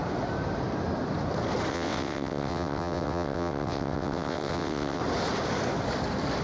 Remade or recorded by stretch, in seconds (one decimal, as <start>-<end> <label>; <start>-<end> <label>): 0.0-1.7 recorded; 1.7-5.0 remade; 5.0-6.4 recorded